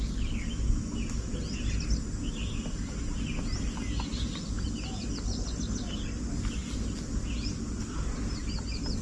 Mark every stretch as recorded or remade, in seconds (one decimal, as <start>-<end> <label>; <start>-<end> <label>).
0.0-9.0 recorded